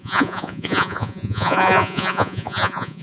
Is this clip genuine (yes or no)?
no